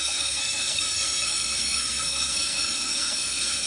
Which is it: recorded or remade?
remade